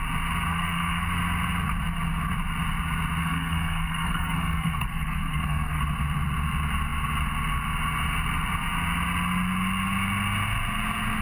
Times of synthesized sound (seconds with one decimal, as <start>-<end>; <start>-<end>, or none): 0.5-1.1; 3.2-5.8